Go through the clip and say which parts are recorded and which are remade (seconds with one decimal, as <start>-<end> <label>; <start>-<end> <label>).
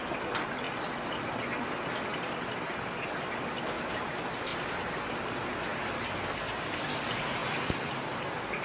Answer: 0.0-8.6 recorded